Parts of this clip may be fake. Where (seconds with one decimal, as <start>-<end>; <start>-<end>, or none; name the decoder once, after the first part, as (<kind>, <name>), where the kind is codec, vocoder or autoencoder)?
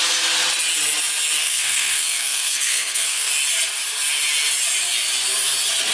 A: 1.4-3.3 (codec, SNAC)